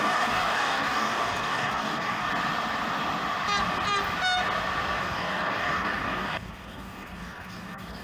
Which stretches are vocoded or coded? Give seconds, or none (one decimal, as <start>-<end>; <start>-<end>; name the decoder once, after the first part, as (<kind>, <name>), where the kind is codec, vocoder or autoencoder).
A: 0.0-2.3 (codec, DAC); 5.0-8.0